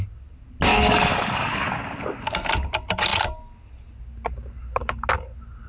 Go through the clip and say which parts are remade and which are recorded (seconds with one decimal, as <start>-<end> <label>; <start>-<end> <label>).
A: 0.0-0.7 recorded; 0.7-1.7 remade; 1.7-5.7 recorded